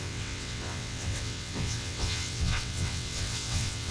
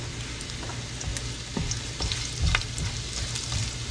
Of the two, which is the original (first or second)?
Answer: second